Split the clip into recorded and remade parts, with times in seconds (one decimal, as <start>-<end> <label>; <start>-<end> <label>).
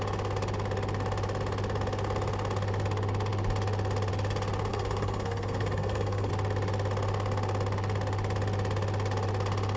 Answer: 0.0-4.7 recorded; 4.7-6.3 remade; 6.3-9.8 recorded